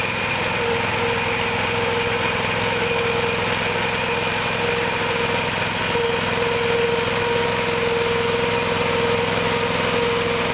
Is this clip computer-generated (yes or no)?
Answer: no